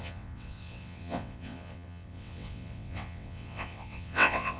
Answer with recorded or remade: remade